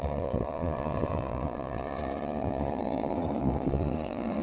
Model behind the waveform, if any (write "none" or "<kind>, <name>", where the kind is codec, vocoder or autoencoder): vocoder, Vocos